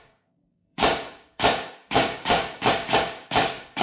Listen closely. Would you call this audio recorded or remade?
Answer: remade